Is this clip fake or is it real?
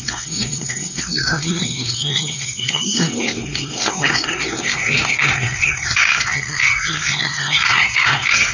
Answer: fake